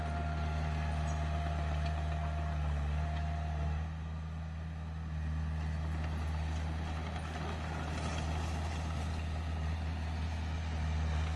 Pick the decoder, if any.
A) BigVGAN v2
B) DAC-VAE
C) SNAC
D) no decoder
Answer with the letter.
D